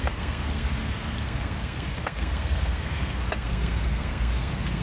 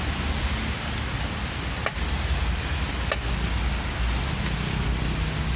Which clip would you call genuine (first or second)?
second